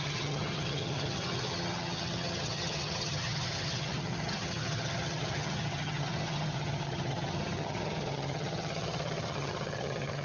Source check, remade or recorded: remade